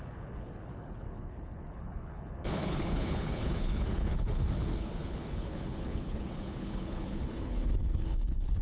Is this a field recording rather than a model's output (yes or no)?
no